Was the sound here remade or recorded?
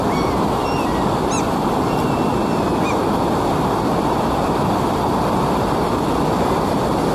recorded